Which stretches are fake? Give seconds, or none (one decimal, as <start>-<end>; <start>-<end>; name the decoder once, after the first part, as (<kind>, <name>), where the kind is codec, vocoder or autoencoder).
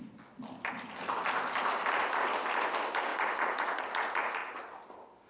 3.1-3.8 (vocoder, Vocos)